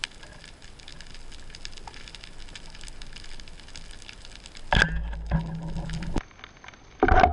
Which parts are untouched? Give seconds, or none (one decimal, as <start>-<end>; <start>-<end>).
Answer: 0.0-7.3